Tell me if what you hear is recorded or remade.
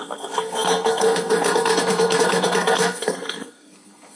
remade